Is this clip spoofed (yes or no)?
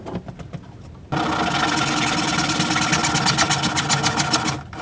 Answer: no